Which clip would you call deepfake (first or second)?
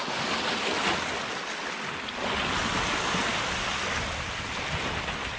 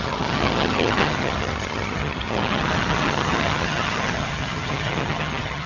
second